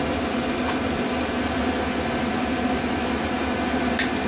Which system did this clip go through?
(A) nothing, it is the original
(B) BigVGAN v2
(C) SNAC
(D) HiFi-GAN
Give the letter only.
A